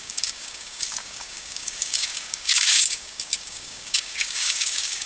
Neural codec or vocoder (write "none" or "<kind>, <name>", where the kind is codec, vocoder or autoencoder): codec, DAC